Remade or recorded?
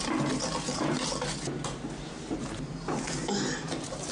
recorded